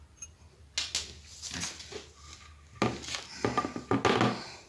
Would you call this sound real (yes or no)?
yes